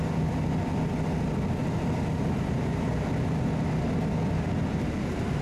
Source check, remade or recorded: recorded